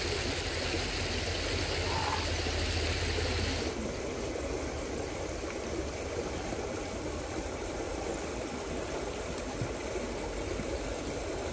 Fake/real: real